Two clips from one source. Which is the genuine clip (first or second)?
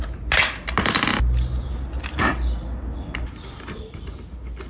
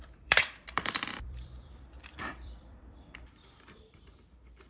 first